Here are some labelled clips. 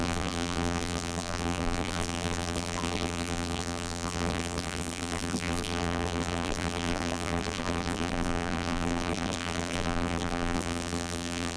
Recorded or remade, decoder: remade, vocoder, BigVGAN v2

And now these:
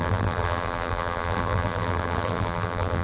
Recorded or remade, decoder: remade, vocoder, BigVGAN v2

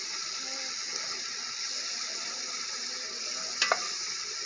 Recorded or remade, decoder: recorded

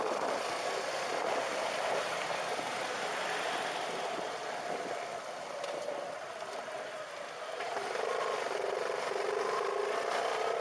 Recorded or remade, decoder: recorded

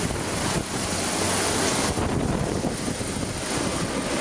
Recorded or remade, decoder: recorded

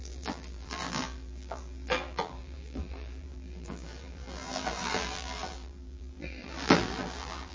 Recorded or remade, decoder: remade, vocoder, BigVGAN v2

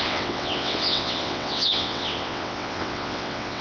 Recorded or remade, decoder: remade, vocoder, WaveNeXt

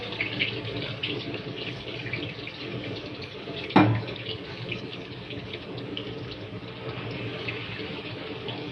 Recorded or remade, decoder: remade, codec, DAC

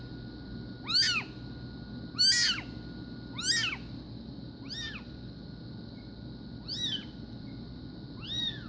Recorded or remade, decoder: recorded